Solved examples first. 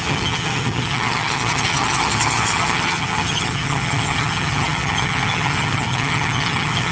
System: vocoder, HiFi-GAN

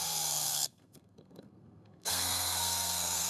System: codec, SNAC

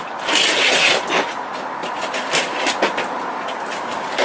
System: none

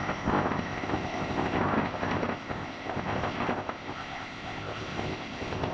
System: codec, ZipCodec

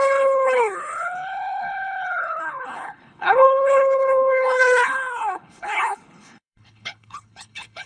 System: codec, HILCodec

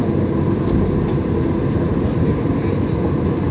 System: none